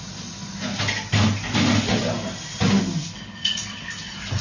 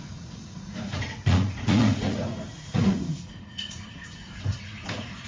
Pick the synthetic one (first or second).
second